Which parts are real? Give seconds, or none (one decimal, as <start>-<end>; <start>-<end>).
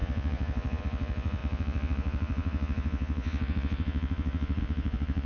none